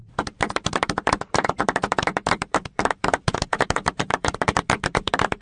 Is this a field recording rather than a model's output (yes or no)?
no